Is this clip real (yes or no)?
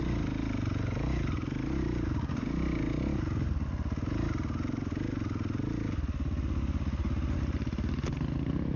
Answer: yes